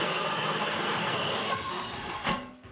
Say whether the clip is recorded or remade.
remade